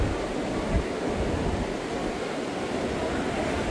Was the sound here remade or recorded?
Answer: recorded